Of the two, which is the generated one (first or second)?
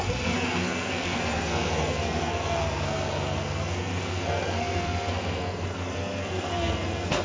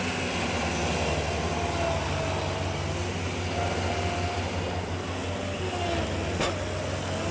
first